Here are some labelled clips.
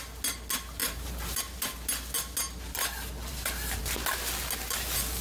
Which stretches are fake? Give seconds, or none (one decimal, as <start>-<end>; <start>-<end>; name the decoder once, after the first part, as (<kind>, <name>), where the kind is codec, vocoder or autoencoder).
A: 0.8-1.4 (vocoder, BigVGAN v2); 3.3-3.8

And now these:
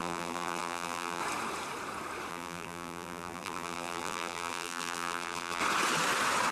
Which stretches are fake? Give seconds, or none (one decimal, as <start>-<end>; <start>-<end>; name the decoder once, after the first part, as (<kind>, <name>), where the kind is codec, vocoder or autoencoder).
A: 0.0-1.2 (vocoder, BigVGAN v2); 2.3-5.6

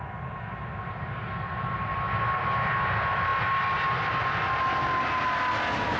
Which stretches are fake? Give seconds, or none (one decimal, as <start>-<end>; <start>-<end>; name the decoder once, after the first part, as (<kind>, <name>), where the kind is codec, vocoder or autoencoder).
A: none

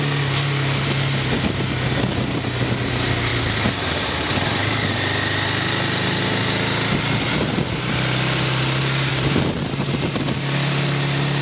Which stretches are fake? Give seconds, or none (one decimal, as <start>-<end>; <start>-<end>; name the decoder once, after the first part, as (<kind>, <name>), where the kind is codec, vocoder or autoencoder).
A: 9.1-9.9 (vocoder, BigVGAN v2)

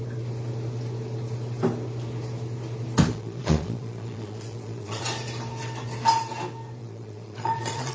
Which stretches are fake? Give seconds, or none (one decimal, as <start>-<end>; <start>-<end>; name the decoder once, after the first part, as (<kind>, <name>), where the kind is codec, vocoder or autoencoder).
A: 3.1-5.0 (vocoder, Vocos); 6.8-7.9

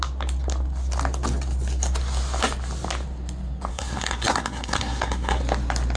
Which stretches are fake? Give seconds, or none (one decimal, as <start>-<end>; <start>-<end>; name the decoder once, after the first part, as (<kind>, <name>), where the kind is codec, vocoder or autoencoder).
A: 3.7-5.4 (codec, SNAC)

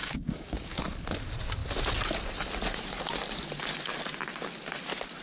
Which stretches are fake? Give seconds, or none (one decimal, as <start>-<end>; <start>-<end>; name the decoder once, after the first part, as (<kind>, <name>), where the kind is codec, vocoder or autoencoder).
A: 0.0-0.8 (codec, DAC)

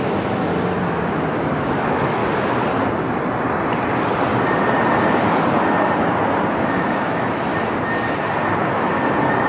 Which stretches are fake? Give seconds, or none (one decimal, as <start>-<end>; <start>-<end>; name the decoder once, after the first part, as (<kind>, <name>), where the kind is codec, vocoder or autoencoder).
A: 0.0-0.5 (autoencoder, DAC-VAE); 1.1-2.2; 6.6-7.5